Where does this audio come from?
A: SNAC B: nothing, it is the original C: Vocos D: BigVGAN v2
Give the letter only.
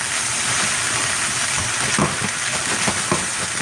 B